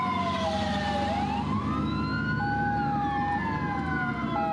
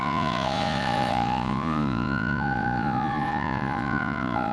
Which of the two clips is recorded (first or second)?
first